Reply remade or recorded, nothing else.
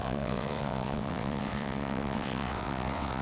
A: remade